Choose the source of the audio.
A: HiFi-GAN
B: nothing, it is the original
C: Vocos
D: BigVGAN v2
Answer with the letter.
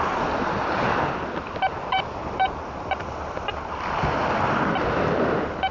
D